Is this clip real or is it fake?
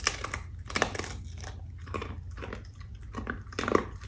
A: real